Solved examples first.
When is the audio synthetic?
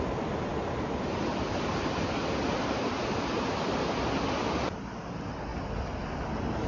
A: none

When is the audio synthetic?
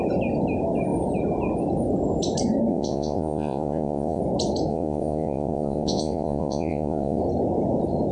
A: 2.7-4.2 (vocoder, Vocos); 4.7-7.2